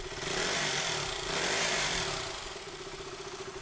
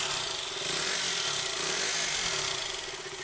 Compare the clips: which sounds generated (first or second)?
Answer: first